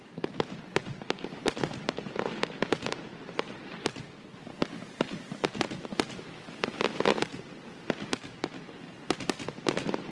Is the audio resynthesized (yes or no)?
no